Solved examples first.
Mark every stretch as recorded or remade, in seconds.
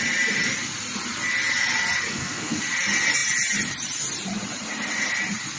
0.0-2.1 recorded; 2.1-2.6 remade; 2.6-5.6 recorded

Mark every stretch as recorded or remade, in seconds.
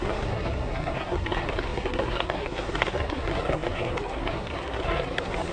0.0-5.5 remade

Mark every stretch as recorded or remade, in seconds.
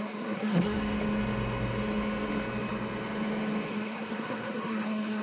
0.0-0.8 remade; 0.8-3.7 recorded; 3.7-5.2 remade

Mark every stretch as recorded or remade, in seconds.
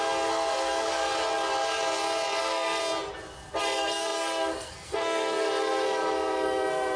0.0-1.1 remade; 1.1-2.4 recorded; 2.4-2.8 remade; 2.8-3.6 recorded; 3.6-7.0 remade